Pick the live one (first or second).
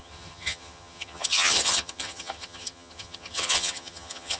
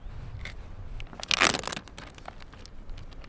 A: second